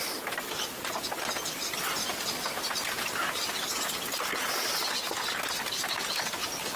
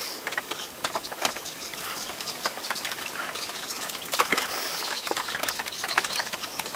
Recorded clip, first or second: first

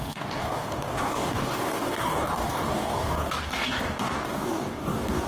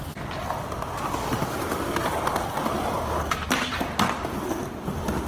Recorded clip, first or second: second